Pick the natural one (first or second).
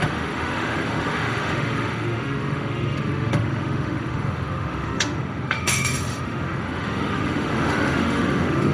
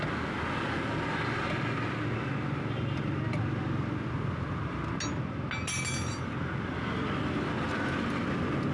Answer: second